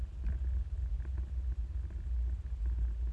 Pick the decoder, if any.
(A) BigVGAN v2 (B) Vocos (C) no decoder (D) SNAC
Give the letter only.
C